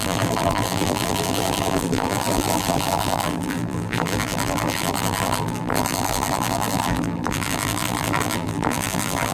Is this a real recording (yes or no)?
no